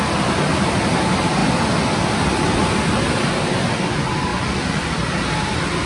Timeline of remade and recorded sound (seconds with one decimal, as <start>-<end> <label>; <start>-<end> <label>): 0.0-4.3 recorded; 4.3-4.9 remade; 4.9-5.9 recorded